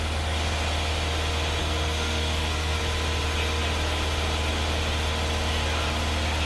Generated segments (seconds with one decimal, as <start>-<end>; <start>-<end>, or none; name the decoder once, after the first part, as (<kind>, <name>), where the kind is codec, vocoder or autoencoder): 1.6-2.8 (codec, SNAC)

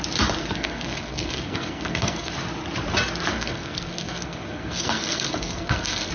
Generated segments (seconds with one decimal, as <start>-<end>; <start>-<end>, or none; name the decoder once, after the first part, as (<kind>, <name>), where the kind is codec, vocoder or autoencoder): 0.4-2.3 (codec, SNAC); 3.3-6.1

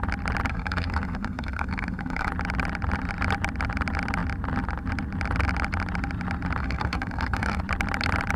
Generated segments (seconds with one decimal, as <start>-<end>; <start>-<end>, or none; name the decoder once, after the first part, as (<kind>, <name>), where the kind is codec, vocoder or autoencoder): 0.5-2.3 (codec, SNAC); 6.6-7.6

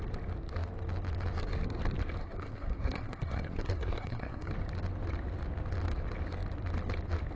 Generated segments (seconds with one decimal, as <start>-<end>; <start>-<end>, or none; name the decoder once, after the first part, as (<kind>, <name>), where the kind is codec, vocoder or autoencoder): 2.2-4.5 (codec, SNAC)

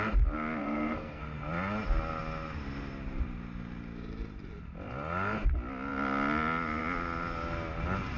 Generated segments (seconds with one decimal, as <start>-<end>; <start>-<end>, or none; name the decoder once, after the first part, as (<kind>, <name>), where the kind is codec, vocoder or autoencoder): 0.6-1.2 (codec, SNAC)